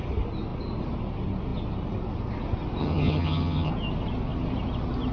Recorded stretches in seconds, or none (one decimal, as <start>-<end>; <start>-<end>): 0.0-2.8; 3.7-5.1